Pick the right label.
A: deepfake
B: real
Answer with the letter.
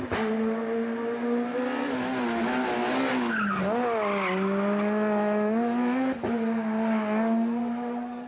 B